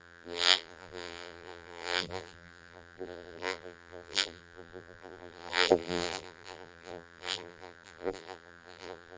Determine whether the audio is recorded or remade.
remade